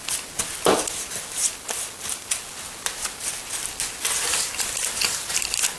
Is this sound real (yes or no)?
yes